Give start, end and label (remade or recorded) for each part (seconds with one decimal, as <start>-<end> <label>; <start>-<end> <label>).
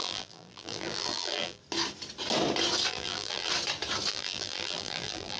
0.0-1.6 remade; 1.6-2.9 recorded; 2.9-3.5 remade; 3.5-4.1 recorded; 4.1-5.4 remade